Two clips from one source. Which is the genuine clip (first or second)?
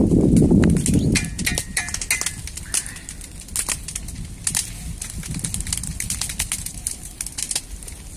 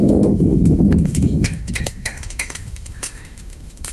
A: first